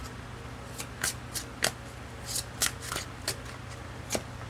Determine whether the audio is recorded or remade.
recorded